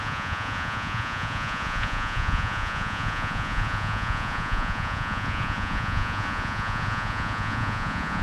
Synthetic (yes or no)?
yes